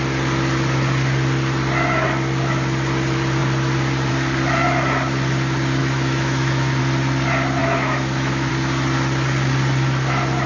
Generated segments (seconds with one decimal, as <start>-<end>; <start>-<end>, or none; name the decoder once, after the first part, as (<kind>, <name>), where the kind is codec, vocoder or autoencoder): 5.8-6.8 (autoencoder, DAC-VAE); 7.6-8.5